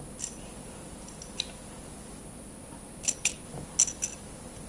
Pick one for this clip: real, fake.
real